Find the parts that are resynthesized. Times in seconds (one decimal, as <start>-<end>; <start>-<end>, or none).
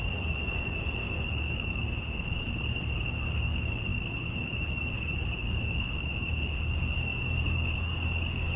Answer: 0.0-8.6